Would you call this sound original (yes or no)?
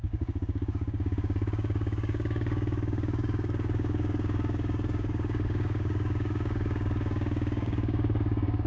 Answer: no